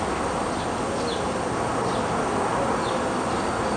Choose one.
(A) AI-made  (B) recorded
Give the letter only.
B